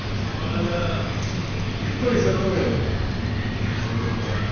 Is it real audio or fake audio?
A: real